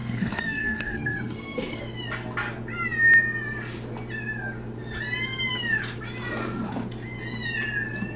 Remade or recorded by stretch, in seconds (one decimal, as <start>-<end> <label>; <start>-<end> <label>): 0.0-1.8 remade; 1.8-8.2 recorded